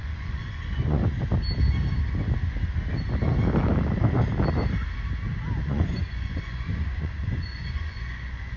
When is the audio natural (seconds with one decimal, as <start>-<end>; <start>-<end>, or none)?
1.0-5.6